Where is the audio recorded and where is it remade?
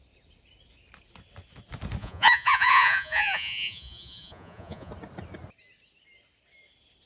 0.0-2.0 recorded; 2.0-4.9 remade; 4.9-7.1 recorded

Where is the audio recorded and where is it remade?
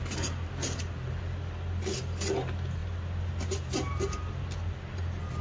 0.0-5.4 recorded